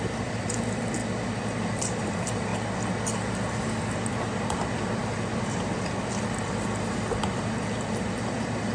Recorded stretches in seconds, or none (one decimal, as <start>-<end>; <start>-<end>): 1.0-1.6; 2.5-3.5